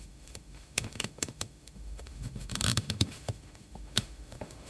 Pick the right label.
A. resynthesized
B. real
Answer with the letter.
A